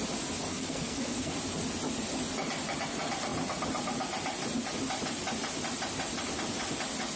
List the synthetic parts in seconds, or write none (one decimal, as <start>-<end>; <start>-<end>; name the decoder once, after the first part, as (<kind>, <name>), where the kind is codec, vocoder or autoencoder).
0.5-1.3 (codec, SNAC)